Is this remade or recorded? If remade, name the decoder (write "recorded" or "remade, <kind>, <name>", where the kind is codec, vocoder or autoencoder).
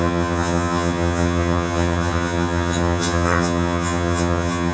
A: remade, vocoder, HiFi-GAN